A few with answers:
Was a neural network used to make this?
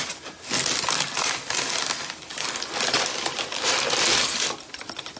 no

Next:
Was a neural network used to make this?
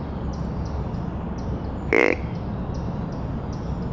no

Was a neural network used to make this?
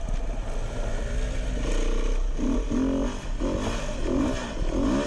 no